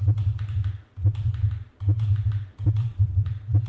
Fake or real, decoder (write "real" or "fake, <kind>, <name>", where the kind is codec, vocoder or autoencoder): fake, vocoder, BigVGAN v2